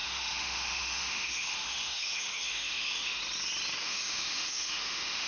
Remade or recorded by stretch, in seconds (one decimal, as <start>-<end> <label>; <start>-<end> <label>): 0.0-3.2 remade; 3.2-3.8 recorded; 3.8-5.3 remade